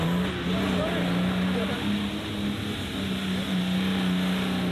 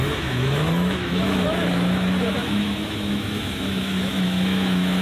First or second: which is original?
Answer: first